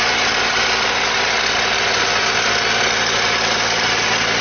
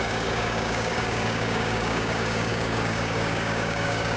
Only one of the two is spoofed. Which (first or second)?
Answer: second